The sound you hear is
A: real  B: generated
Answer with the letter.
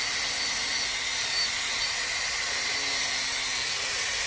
A